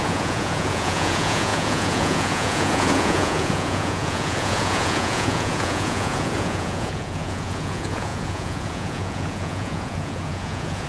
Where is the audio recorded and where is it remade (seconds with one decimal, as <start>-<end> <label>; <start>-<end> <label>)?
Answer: 0.0-10.9 remade